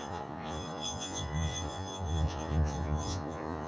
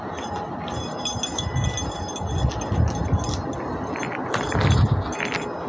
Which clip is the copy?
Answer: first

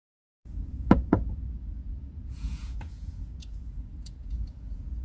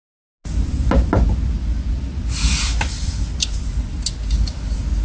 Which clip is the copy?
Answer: first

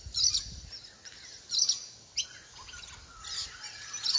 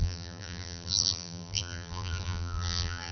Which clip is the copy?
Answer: second